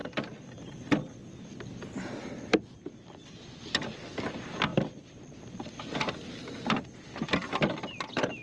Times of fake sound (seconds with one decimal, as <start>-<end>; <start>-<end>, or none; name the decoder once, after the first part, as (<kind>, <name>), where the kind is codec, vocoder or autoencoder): 0.6-4.7 (vocoder, BigVGAN v2); 5.5-8.4

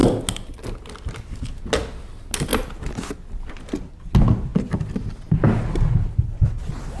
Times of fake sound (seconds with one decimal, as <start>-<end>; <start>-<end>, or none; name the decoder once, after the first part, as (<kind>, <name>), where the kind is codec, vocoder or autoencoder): none

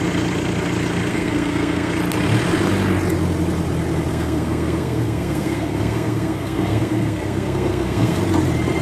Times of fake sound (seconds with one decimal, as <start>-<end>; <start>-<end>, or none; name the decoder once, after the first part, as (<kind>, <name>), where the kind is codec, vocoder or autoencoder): 1.1-1.9 (codec, SNAC); 4.1-8.2

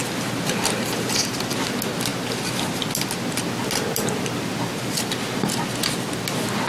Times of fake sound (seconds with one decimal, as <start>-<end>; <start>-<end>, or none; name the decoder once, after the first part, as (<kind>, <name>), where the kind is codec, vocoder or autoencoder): none

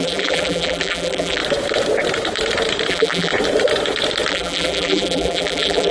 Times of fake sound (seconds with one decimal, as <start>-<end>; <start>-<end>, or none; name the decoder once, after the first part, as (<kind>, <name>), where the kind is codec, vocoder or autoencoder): 0.0-1.4 (vocoder, BigVGAN v2); 2.9-3.3; 4.3-5.9

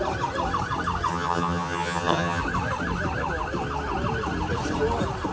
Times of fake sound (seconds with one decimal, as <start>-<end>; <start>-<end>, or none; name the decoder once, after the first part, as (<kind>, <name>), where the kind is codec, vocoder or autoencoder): 1.1-2.4 (vocoder, HiFi-GAN)

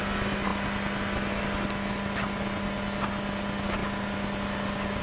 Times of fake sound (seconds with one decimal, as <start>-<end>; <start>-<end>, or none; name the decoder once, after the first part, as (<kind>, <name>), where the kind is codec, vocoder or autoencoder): none

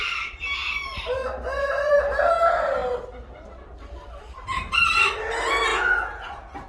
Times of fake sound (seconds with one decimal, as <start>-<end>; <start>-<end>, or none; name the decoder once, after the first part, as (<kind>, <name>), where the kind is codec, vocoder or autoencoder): 5.7-6.7 (vocoder, Vocos)